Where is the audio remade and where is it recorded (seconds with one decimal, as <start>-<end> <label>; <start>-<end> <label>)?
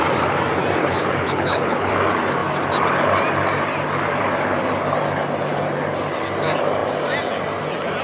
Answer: 0.0-0.8 recorded; 0.8-1.9 remade; 1.9-8.0 recorded